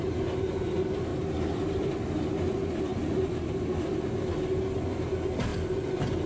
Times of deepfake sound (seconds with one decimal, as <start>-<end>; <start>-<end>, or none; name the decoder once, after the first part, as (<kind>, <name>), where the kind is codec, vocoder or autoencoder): 1.1-1.9 (vocoder, BigVGAN v2)